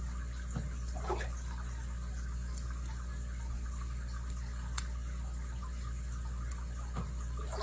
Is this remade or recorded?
recorded